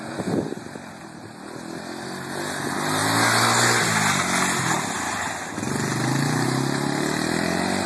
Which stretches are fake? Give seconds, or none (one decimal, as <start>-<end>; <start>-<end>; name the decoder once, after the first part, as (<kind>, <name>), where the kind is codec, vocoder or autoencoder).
none